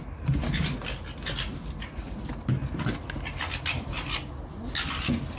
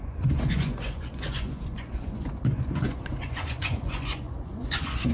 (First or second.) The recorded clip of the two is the first